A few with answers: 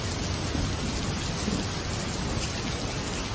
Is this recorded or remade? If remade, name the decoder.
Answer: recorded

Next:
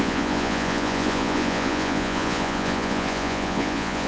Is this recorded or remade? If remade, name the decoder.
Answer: remade, vocoder, Vocos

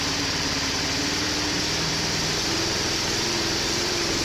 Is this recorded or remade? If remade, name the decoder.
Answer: remade, vocoder, BigVGAN v2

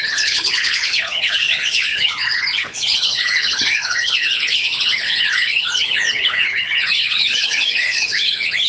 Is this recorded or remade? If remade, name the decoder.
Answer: remade, codec, HILCodec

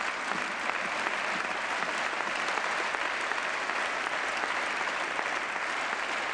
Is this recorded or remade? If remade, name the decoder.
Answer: recorded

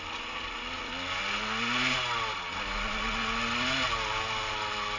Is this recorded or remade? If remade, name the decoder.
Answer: recorded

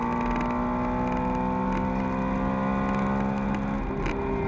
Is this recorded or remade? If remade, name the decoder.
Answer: recorded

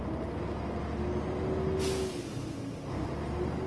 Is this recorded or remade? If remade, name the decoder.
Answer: recorded